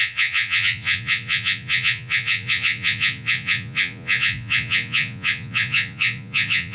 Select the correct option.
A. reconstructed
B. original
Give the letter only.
A